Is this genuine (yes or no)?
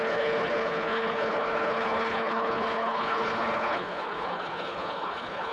no